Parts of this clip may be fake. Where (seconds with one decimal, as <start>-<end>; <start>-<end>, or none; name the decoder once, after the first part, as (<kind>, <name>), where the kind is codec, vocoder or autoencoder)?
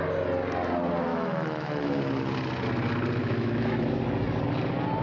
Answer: 1.1-2.0 (autoencoder, DAC-VAE); 3.2-4.0